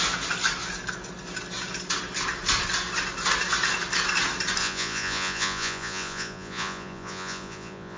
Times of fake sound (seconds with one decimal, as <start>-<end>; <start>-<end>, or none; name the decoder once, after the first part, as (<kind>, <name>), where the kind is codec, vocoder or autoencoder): 4.6-8.0 (vocoder, Vocos)